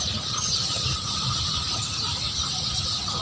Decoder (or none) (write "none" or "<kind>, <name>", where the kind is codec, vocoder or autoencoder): none